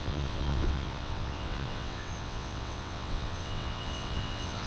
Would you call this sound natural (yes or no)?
no